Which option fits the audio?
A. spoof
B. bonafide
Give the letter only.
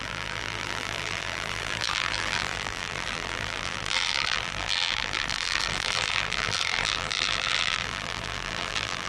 A